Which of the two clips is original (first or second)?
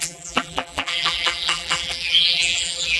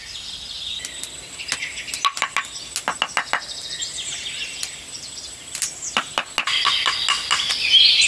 second